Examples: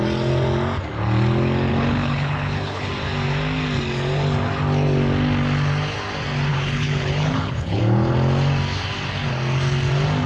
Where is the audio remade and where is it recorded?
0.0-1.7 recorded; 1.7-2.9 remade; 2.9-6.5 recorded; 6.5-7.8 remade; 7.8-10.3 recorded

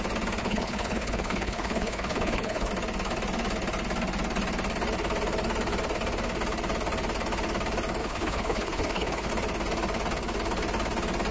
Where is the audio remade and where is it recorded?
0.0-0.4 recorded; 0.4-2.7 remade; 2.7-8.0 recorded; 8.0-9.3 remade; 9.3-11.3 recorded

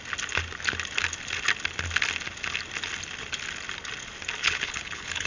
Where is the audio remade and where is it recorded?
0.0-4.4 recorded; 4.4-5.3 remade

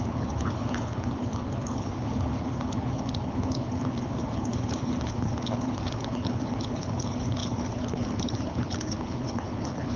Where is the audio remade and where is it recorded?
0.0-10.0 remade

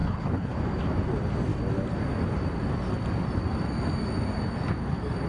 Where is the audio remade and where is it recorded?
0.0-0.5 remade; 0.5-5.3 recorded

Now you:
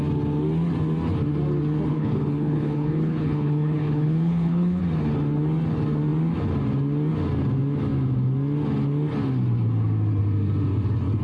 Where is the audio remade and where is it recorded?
0.0-1.9 recorded; 1.9-4.8 remade; 4.8-11.2 recorded

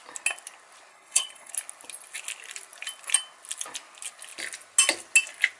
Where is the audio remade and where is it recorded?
0.0-0.9 recorded; 0.9-1.5 remade; 1.5-5.6 recorded